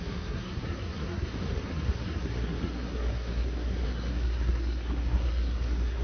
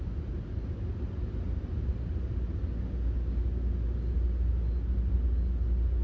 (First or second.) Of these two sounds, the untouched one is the second